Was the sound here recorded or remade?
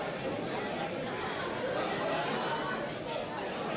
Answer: recorded